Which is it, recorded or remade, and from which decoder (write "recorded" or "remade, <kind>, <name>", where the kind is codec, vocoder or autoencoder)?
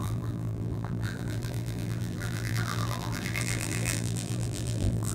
remade, vocoder, BigVGAN v2